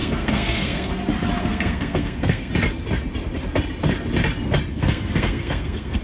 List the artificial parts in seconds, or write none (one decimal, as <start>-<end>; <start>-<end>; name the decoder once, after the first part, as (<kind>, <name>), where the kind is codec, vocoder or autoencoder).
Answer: 0.0-0.9 (codec, SNAC); 1.4-2.5; 4.7-6.0